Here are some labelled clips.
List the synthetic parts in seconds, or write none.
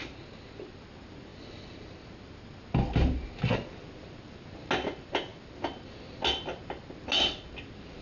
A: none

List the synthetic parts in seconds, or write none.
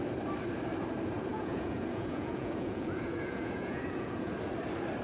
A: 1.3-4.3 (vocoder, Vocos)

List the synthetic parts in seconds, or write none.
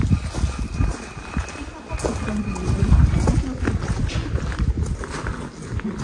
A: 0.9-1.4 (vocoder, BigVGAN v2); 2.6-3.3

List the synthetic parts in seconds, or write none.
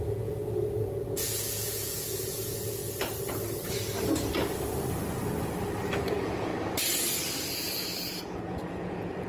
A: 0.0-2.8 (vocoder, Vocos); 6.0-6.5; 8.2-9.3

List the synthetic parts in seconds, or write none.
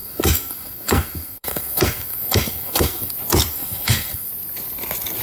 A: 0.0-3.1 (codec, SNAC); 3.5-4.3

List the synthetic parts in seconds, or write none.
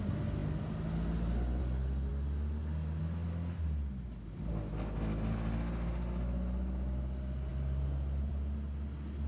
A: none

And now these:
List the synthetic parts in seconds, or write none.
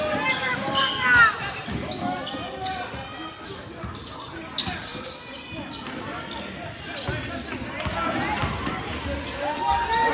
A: none